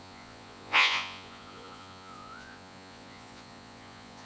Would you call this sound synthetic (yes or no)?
yes